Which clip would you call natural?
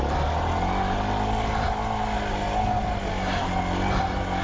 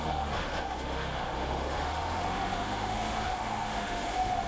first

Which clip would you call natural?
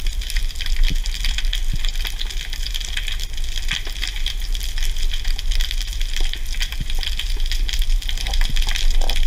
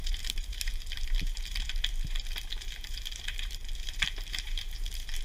first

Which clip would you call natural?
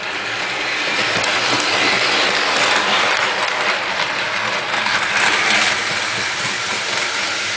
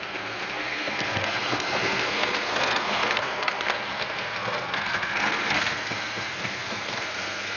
first